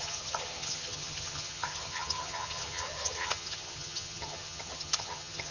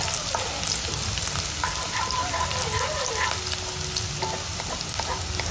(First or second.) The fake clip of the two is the first